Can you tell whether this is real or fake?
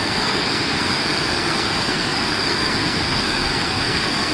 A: fake